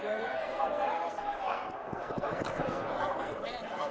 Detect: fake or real fake